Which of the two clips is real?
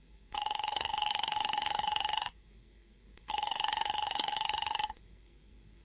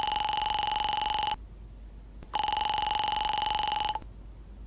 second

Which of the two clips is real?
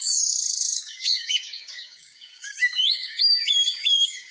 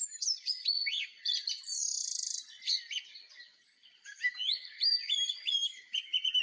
second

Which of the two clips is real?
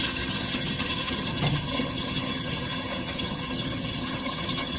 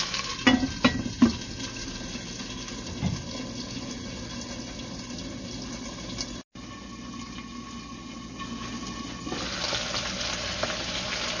second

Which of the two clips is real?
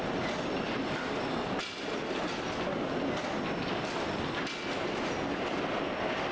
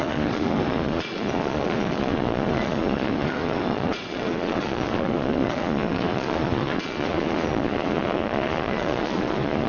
first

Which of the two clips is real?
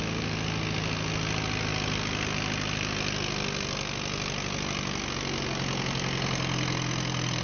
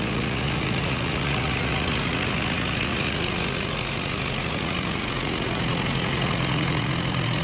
first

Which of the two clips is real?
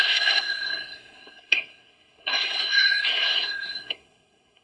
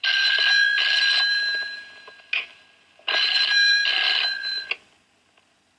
second